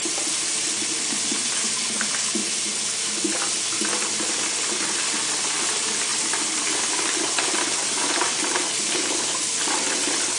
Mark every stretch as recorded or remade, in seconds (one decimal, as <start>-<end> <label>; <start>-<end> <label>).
0.0-10.4 recorded

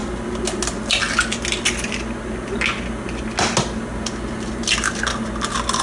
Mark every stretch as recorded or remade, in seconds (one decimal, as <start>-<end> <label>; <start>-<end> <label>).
0.0-5.8 recorded

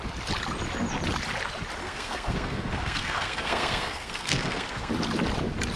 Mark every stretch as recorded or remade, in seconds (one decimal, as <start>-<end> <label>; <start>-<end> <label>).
0.0-1.8 recorded; 1.8-4.9 remade; 4.9-5.8 recorded

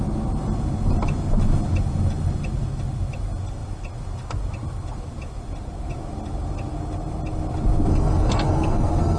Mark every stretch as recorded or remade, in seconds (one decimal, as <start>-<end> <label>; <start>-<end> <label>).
0.0-7.9 recorded; 7.9-9.2 remade

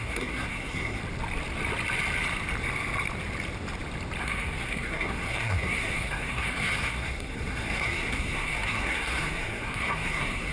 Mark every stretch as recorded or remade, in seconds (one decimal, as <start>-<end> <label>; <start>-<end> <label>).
0.0-1.0 remade; 1.0-4.2 recorded; 4.2-10.5 remade

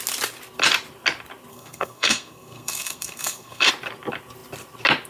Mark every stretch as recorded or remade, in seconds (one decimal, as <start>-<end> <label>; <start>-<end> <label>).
0.0-1.5 recorded; 1.5-3.7 remade; 3.7-5.1 recorded

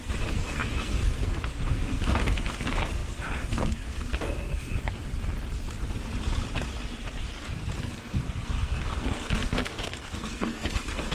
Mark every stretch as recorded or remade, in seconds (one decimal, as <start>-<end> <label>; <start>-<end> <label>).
0.0-5.1 remade; 5.1-7.8 recorded; 7.8-11.1 remade

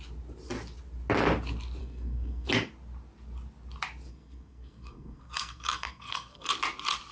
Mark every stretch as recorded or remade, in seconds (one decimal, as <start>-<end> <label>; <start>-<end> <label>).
0.0-1.8 recorded; 1.8-2.5 remade; 2.5-4.1 recorded; 4.1-6.5 remade; 6.5-7.1 recorded